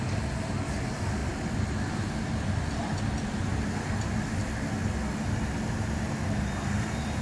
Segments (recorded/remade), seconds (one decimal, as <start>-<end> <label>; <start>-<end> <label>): 0.0-1.2 recorded; 1.2-4.3 remade; 4.3-7.2 recorded